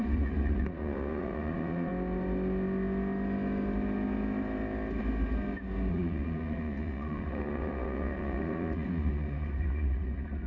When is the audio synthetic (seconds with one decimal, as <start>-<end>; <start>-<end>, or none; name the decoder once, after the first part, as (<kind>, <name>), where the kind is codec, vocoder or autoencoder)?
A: 0.0-1.9 (vocoder, Vocos); 5.9-10.5